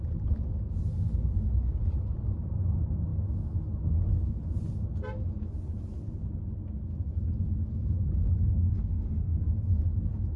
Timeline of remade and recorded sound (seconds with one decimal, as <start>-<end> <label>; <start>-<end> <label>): 0.0-8.6 recorded; 8.6-9.6 remade; 9.6-10.4 recorded